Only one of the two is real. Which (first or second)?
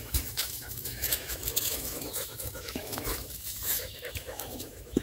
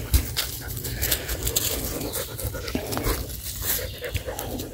second